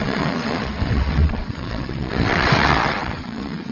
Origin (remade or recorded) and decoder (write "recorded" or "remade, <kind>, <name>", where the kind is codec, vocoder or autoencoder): remade, vocoder, WaveNeXt